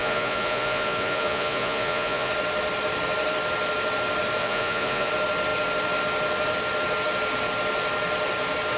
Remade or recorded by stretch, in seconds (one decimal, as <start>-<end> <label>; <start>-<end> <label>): 0.0-2.3 remade; 2.3-4.4 recorded; 4.4-5.1 remade; 5.1-8.8 recorded